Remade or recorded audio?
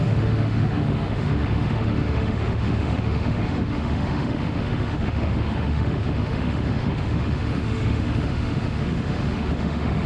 remade